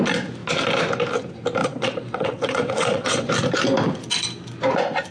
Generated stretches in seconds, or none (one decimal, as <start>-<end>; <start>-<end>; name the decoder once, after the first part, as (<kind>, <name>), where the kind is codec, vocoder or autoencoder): 1.6-3.3 (vocoder, WaveNeXt)